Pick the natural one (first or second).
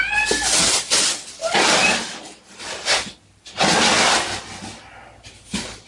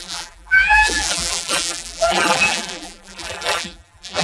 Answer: first